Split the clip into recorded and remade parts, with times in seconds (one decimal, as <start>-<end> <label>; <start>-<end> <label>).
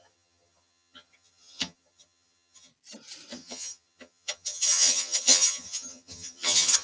0.0-2.7 remade; 2.7-3.3 recorded; 3.3-6.8 remade